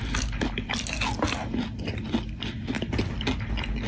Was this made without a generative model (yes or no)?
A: yes